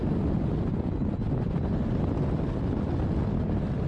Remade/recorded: recorded